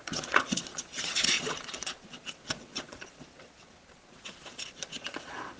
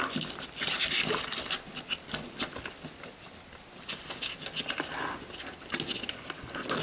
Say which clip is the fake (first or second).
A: first